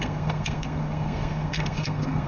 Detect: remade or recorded remade